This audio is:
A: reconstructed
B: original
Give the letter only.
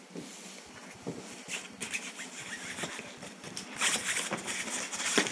B